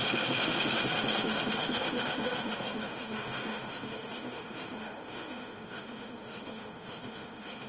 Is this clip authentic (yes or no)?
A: no